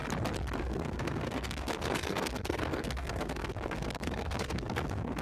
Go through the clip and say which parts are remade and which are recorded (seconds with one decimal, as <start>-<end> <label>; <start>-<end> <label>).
0.0-0.6 recorded; 0.6-5.2 remade